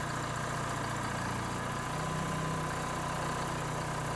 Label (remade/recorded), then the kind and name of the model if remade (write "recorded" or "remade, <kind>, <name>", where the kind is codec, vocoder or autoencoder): recorded